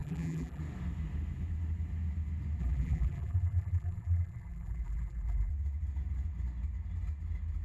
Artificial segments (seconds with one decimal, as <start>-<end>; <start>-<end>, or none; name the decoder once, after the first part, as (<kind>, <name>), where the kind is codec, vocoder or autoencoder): 0.0-0.6 (vocoder, BigVGAN v2); 2.6-5.5